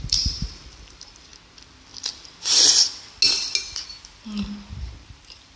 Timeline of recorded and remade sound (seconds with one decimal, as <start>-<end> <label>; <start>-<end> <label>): 0.0-1.3 remade; 1.3-4.7 recorded; 4.7-5.6 remade